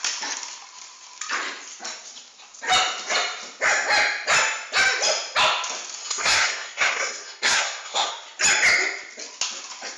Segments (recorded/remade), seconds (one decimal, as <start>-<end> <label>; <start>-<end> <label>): 0.0-6.0 recorded; 6.0-8.1 remade; 8.1-10.0 recorded